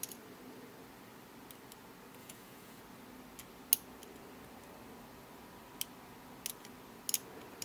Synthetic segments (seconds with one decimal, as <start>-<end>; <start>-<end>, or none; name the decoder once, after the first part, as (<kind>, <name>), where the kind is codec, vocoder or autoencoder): 2.2-2.8 (vocoder, Vocos)